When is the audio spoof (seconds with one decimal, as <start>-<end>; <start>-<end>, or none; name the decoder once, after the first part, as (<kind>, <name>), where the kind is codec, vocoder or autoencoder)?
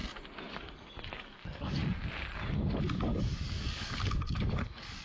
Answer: 0.6-1.8 (codec, DAC); 2.6-5.0